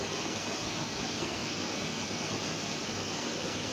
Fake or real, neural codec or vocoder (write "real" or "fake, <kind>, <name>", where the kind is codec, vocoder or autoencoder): fake, codec, SNAC